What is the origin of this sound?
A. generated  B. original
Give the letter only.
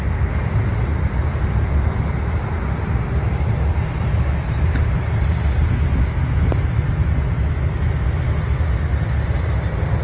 B